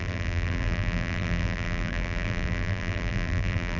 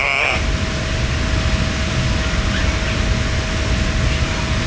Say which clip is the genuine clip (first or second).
second